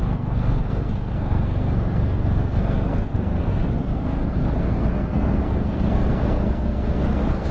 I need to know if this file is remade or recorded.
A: remade